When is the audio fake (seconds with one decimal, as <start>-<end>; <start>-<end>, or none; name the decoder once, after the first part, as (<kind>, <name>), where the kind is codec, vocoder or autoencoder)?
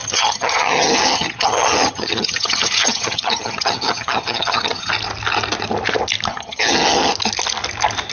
0.0-4.9 (vocoder, HiFi-GAN); 6.3-7.1